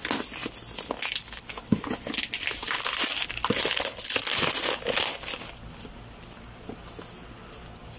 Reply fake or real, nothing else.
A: real